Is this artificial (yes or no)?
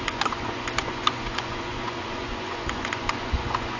yes